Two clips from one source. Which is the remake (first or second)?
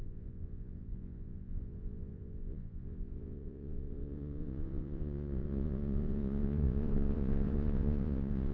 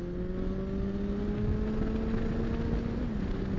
first